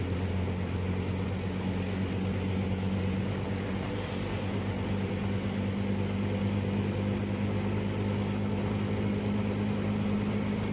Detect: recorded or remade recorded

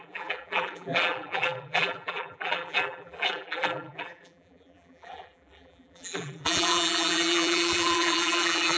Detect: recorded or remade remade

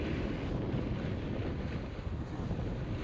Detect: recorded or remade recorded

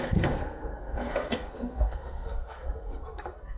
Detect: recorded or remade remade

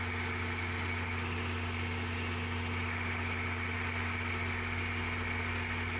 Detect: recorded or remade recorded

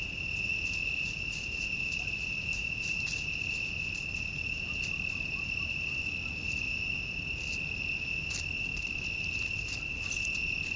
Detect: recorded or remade recorded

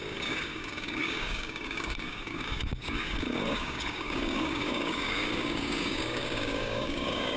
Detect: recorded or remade remade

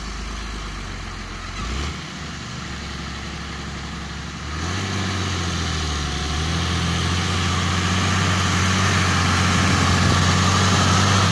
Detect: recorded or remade recorded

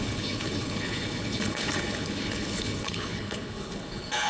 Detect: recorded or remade remade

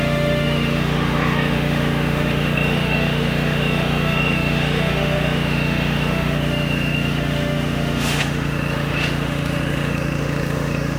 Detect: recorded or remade remade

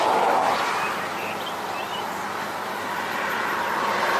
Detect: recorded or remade recorded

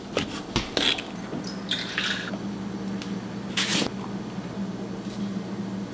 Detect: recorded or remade recorded